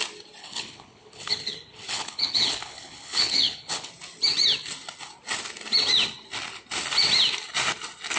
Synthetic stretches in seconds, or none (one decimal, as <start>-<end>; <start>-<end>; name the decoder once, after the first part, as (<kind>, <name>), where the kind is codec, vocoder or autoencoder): 0.4-3.9 (codec, HILCodec)